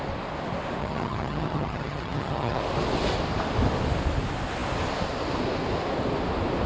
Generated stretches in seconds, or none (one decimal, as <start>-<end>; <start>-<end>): 0.8-2.6